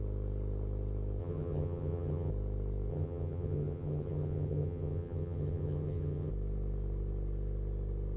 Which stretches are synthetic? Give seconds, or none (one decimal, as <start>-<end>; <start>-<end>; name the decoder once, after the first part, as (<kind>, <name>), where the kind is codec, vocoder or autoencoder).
1.2-2.3 (vocoder, HiFi-GAN); 2.9-6.3

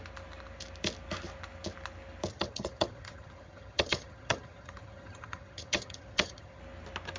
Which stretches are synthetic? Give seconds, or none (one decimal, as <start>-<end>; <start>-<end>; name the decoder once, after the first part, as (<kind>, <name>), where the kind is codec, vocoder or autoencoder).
2.3-6.6 (vocoder, HiFi-GAN)

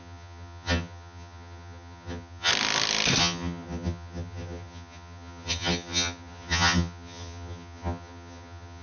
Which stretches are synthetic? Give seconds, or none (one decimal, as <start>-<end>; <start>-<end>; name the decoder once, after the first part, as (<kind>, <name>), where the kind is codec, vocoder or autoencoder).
0.0-2.5 (vocoder, HiFi-GAN); 3.2-8.8

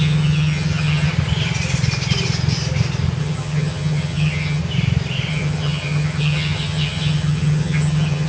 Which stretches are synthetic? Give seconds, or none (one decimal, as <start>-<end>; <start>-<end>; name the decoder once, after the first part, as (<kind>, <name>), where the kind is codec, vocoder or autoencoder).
0.0-1.1 (vocoder, HiFi-GAN); 3.2-4.6; 5.3-8.3

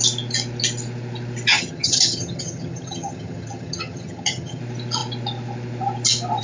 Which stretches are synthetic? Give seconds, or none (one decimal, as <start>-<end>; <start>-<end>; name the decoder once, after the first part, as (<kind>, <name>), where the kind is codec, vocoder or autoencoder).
1.5-4.6 (vocoder, HiFi-GAN)